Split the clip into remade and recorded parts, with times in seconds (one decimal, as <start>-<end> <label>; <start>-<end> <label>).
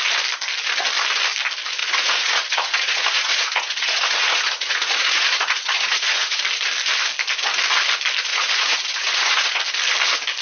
0.0-1.8 recorded; 1.8-6.4 remade; 6.4-8.3 recorded; 8.3-9.6 remade; 9.6-10.4 recorded